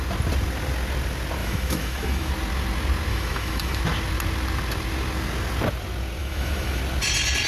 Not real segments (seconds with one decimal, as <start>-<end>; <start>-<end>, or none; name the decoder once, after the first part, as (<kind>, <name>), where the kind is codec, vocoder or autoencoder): 1.4-2.3 (autoencoder, DAC-VAE); 3.1-3.8; 6.2-6.8